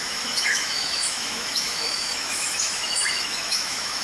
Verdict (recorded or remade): remade